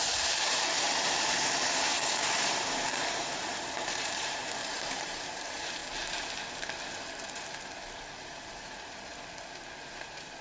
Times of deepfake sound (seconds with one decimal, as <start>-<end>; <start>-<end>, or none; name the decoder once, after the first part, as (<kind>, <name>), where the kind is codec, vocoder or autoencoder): 0.0-5.8 (vocoder, BigVGAN v2); 8.2-9.1; 9.9-10.4